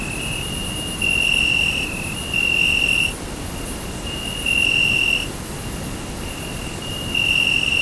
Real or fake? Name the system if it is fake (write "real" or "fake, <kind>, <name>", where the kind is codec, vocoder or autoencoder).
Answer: real